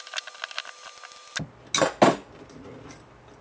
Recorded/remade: recorded